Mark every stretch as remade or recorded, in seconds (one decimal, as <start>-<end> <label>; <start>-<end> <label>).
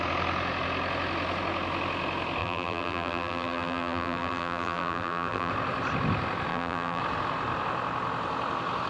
0.0-2.4 recorded; 2.4-5.5 remade; 5.5-6.5 recorded; 6.5-7.0 remade; 7.0-8.9 recorded